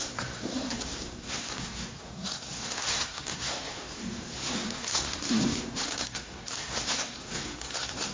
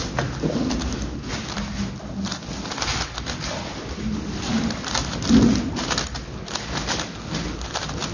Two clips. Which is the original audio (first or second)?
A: second